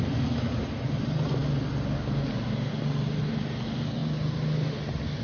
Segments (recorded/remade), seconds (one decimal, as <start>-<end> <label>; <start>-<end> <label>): 0.0-5.2 recorded